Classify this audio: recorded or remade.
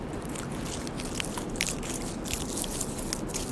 recorded